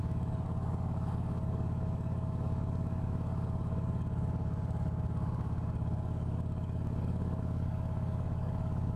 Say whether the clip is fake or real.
fake